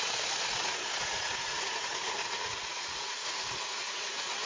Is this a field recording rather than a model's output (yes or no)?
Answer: no